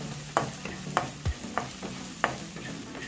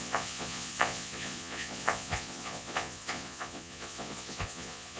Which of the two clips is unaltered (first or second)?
first